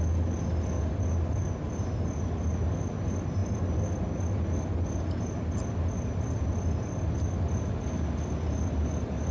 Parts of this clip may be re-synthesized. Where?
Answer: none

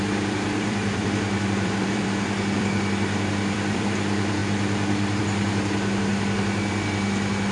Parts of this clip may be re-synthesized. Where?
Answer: 0.0-6.1 (vocoder, BigVGAN v2)

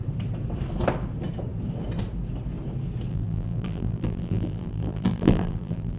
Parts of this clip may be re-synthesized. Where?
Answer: 3.1-6.0 (vocoder, BigVGAN v2)